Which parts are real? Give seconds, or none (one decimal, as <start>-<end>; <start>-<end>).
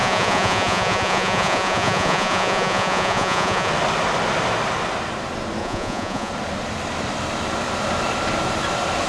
3.7-5.6; 6.3-9.1